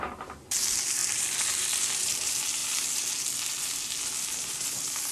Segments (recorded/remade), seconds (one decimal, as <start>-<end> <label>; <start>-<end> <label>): 0.0-2.6 remade; 2.6-4.4 recorded; 4.4-5.1 remade